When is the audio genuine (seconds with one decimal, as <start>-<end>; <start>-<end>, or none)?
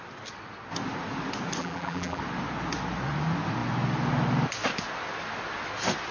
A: 0.0-1.6; 2.2-6.1